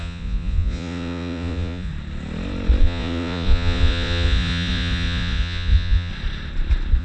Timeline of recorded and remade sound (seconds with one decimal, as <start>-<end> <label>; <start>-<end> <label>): 0.0-1.9 remade; 1.9-2.8 recorded; 2.8-6.1 remade; 6.1-7.0 recorded

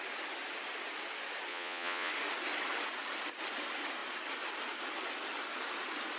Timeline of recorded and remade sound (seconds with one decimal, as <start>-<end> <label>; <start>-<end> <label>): 0.0-1.5 recorded; 1.5-2.1 remade; 2.1-6.2 recorded